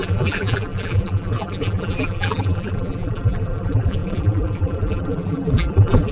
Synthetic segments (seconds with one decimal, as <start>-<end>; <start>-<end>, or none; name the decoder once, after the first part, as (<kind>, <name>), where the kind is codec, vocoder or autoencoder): 0.0-6.1 (vocoder, BigVGAN v2)